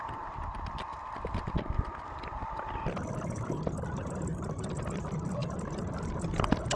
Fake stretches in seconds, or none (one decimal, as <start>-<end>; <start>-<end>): 0.0-5.4; 5.9-6.8